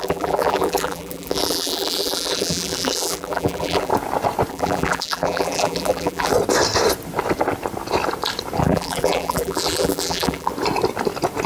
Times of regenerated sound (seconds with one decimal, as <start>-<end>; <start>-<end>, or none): 0.0-3.9; 4.5-6.3; 8.6-10.5